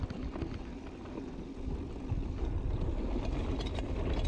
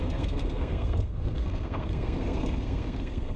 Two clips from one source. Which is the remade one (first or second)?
second